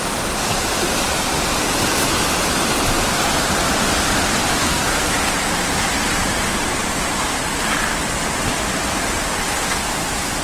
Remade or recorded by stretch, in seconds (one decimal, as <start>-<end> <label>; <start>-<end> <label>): 0.0-4.6 recorded; 4.6-5.1 remade; 5.1-10.4 recorded